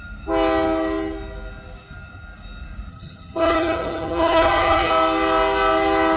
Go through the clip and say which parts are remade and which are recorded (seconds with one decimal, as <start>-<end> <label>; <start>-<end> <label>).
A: 0.0-2.9 recorded; 2.9-4.9 remade; 4.9-6.2 recorded